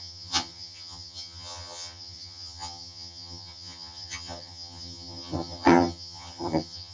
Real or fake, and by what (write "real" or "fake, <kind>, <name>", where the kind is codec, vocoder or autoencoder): fake, vocoder, HiFi-GAN